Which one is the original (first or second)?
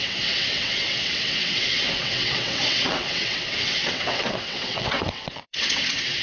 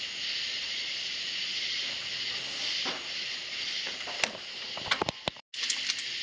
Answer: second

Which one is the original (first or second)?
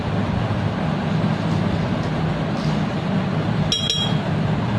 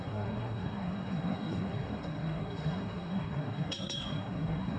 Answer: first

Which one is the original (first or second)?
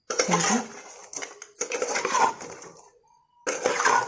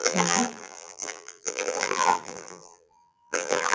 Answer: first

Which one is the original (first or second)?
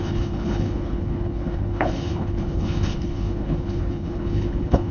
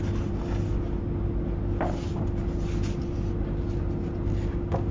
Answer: second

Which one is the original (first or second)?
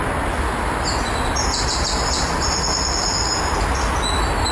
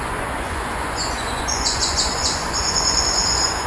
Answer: first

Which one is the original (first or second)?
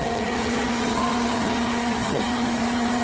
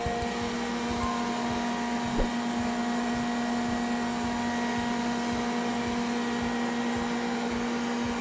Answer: second